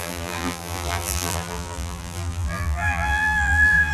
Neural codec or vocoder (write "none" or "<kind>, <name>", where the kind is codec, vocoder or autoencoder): vocoder, BigVGAN v2